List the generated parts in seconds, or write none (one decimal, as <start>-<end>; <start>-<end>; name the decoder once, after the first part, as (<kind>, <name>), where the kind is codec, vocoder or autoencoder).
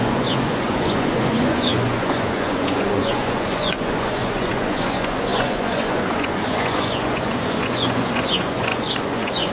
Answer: 0.0-9.5 (vocoder, Vocos)